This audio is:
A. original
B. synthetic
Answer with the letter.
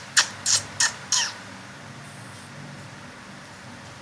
A